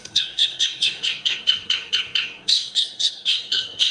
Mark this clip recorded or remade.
remade